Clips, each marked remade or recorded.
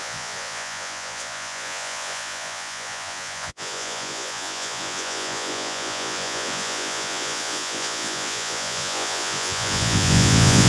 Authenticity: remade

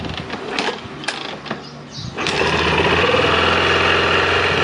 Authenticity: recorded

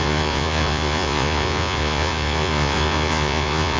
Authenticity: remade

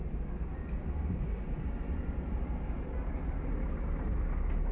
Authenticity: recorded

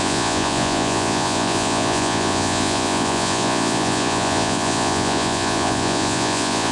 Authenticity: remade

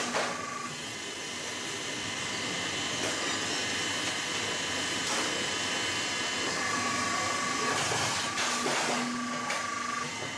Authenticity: recorded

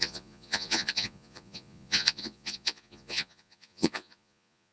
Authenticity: remade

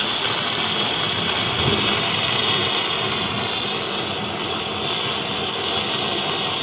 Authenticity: recorded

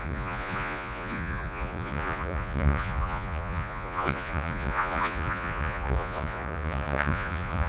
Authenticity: remade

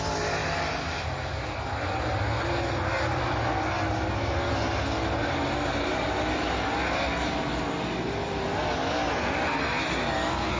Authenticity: recorded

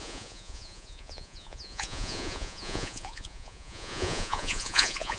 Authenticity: remade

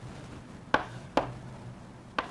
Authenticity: recorded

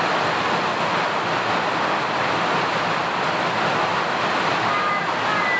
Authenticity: recorded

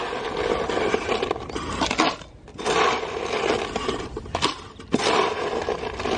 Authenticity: recorded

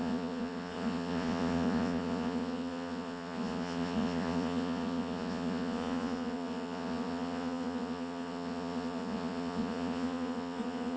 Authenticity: remade